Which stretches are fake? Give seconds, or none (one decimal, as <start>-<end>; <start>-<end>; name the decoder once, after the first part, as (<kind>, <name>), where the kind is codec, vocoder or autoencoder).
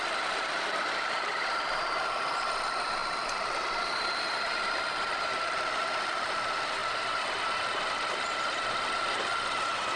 none